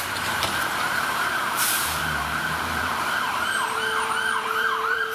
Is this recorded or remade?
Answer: remade